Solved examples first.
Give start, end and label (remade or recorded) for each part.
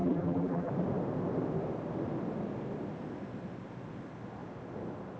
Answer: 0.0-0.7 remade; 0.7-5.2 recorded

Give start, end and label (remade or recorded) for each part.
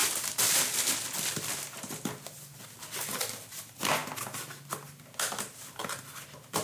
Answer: 0.0-0.9 remade; 0.9-6.6 recorded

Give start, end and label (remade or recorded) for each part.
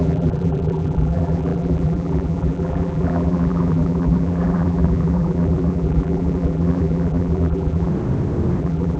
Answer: 0.0-7.9 remade; 7.9-8.6 recorded; 8.6-9.0 remade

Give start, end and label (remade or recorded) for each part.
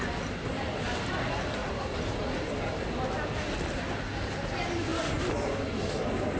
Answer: 0.0-1.6 recorded; 1.6-2.1 remade; 2.1-6.4 recorded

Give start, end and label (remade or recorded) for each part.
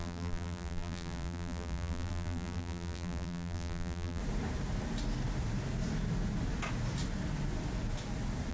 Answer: 0.0-4.2 remade; 4.2-8.5 recorded